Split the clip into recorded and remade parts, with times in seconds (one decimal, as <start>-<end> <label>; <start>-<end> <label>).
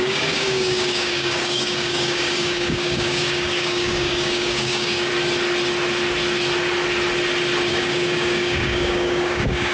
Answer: 0.0-5.1 remade; 5.1-7.7 recorded; 7.7-9.7 remade